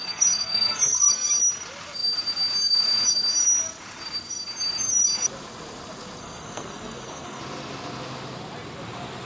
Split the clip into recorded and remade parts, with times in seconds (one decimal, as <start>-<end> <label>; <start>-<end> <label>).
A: 0.0-1.3 remade; 1.3-6.2 recorded; 6.2-7.4 remade; 7.4-9.3 recorded